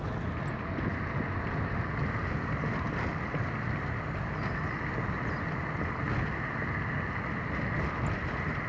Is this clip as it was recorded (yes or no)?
yes